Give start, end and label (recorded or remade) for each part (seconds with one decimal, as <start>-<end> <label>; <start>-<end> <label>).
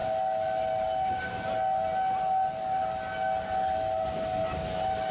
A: 0.0-5.1 recorded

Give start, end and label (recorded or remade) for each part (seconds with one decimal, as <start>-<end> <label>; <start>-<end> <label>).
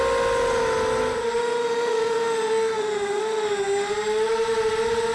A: 0.0-1.4 recorded; 1.4-3.9 remade; 3.9-5.1 recorded